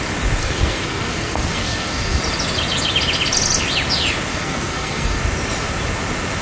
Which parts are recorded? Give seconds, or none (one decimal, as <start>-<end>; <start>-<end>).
0.0-0.4; 2.2-4.3; 5.2-6.4